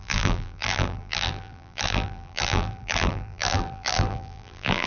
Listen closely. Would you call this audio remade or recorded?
remade